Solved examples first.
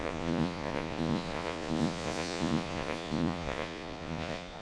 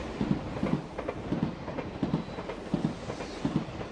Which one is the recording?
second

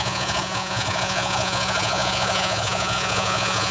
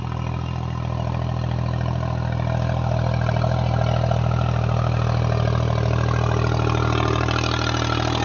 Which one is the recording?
second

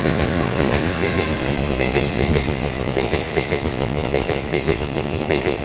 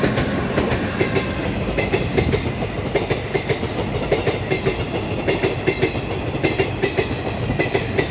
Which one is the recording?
second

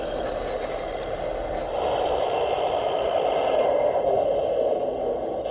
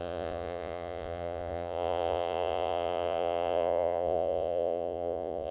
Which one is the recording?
first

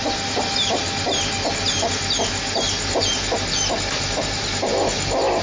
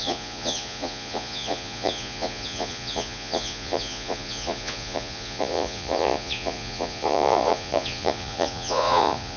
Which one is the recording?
first